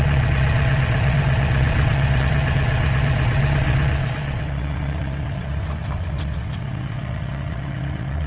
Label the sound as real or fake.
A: fake